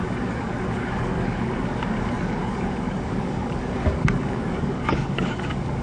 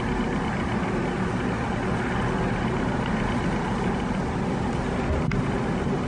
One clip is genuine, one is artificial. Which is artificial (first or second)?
first